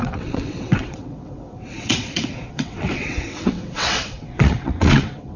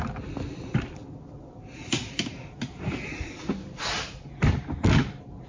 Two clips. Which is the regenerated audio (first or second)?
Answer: first